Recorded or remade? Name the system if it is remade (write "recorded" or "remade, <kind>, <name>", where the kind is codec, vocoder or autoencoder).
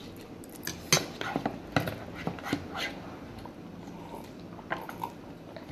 recorded